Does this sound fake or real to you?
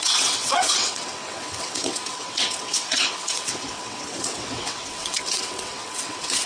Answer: fake